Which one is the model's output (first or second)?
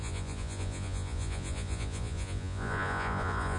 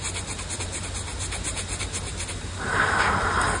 first